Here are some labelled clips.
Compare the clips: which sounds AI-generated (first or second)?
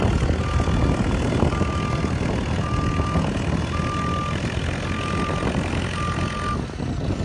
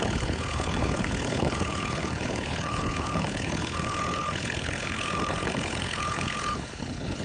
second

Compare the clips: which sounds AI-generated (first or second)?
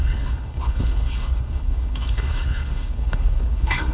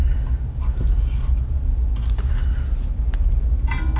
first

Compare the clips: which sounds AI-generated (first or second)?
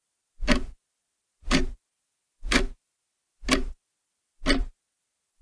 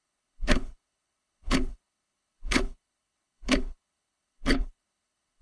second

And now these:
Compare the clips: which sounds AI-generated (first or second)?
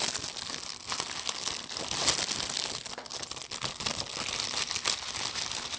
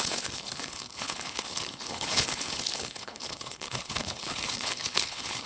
second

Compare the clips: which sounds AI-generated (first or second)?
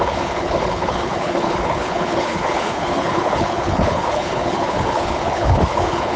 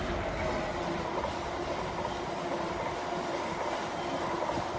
first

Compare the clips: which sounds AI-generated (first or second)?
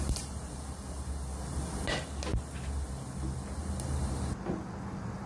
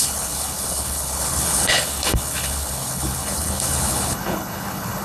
second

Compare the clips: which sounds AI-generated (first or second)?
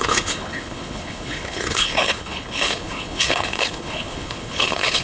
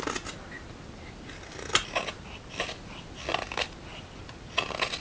first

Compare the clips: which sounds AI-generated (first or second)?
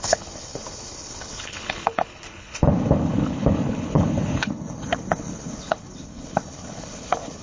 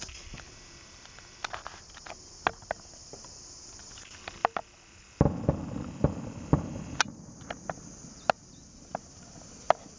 first